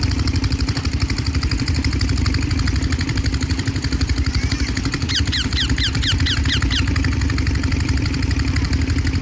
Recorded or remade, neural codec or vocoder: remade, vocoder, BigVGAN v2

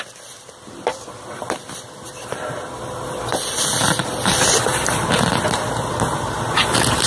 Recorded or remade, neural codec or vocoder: recorded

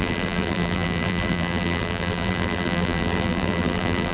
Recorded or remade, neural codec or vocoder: remade, vocoder, BigVGAN v2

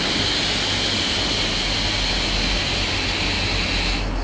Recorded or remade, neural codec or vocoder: recorded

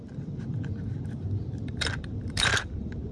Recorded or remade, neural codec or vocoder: remade, vocoder, BigVGAN v2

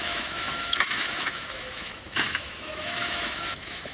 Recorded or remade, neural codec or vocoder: remade, autoencoder, DAC-VAE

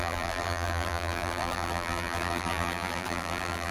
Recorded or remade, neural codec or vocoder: remade, vocoder, BigVGAN v2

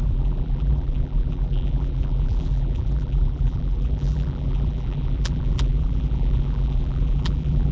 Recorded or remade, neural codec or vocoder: remade, vocoder, BigVGAN v2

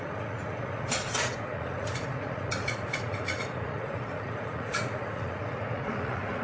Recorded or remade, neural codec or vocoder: remade, vocoder, Vocos